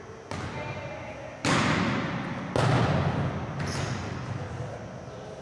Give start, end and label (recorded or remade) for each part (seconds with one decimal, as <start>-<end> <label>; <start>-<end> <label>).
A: 0.0-5.4 recorded